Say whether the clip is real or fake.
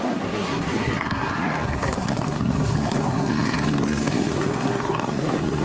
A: fake